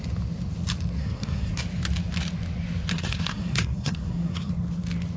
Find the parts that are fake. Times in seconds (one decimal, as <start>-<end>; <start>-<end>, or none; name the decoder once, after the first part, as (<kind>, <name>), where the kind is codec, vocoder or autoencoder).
1.0-1.5 (codec, SNAC); 2.9-4.5